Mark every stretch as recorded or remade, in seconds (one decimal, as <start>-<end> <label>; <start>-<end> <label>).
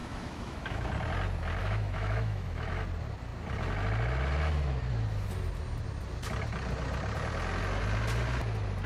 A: 0.0-0.9 remade; 0.9-1.6 recorded; 1.6-2.8 remade; 2.8-8.9 recorded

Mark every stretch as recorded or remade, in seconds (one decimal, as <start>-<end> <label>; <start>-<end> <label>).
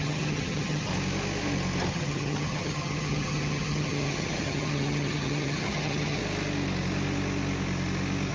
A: 0.0-0.9 remade; 0.9-1.9 recorded; 1.9-6.2 remade; 6.2-8.3 recorded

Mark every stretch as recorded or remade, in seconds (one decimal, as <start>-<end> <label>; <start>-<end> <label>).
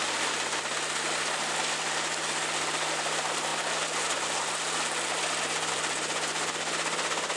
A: 0.0-7.4 recorded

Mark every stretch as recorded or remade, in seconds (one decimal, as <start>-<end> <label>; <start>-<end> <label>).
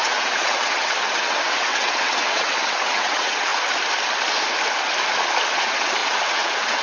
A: 0.0-3.5 remade; 3.5-5.5 recorded; 5.5-6.8 remade